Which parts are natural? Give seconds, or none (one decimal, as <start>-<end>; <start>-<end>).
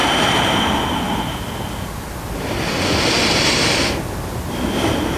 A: 0.0-5.2